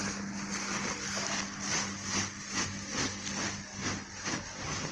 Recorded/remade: recorded